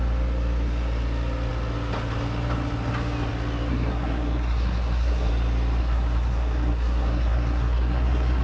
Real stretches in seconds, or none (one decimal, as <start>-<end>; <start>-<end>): 0.0-3.7; 5.3-5.8